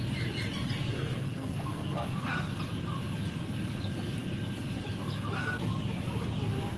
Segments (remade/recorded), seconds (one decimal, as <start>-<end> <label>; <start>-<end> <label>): 0.0-0.9 recorded; 0.9-2.3 remade; 2.3-6.8 recorded